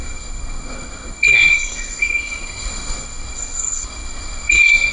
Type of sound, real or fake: fake